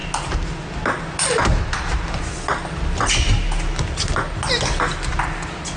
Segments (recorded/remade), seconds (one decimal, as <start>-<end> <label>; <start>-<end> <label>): 0.0-5.8 recorded